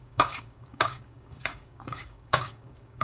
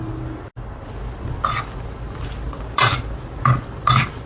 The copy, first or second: first